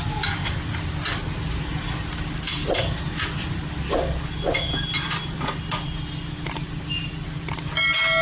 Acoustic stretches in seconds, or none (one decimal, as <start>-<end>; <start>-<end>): 0.0-8.2